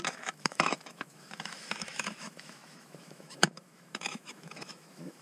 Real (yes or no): no